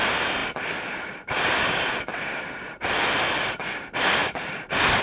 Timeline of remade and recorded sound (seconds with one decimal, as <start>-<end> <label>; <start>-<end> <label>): 0.0-5.0 recorded